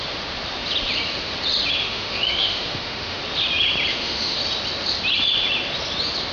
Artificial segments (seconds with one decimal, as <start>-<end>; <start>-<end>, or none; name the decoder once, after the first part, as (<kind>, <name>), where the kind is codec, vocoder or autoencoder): 1.8-3.2 (autoencoder, DAC-VAE); 3.9-4.4